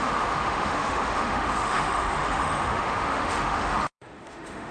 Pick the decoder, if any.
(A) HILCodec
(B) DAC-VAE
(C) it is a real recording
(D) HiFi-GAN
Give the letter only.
B